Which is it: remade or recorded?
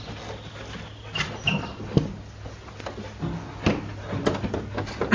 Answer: recorded